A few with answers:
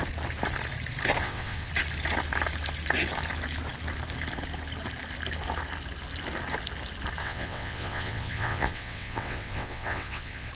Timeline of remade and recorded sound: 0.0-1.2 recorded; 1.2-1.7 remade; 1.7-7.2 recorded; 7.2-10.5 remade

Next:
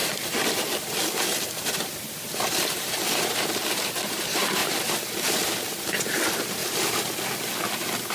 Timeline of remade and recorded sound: 0.0-1.7 recorded; 1.7-6.6 remade; 6.6-8.1 recorded

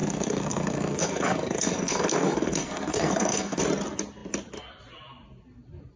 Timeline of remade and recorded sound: 0.0-3.6 remade; 3.6-6.0 recorded

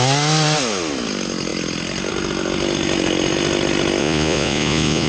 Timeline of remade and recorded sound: 0.0-4.0 recorded; 4.0-5.1 remade

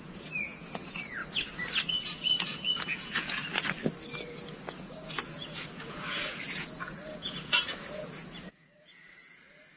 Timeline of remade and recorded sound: 0.0-1.2 remade; 1.2-1.9 recorded; 1.9-3.4 remade; 3.4-4.3 recorded; 4.3-9.8 remade

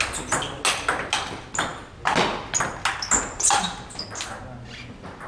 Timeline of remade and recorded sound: 0.0-5.3 recorded

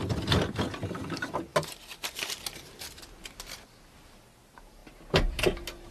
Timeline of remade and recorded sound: 0.0-5.9 recorded